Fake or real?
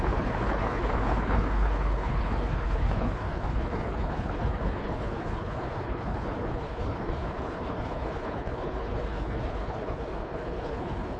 fake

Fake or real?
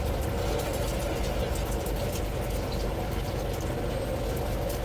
real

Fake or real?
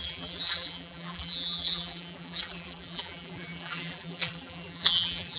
fake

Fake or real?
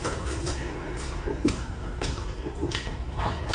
fake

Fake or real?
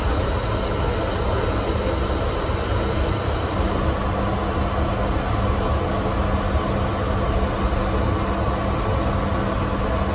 real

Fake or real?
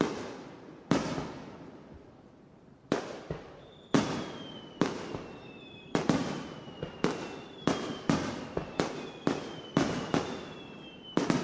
real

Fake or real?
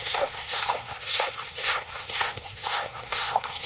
fake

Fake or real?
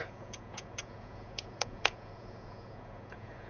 fake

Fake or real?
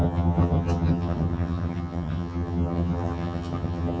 fake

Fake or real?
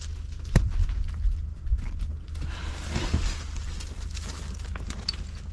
real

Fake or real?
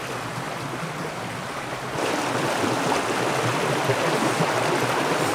real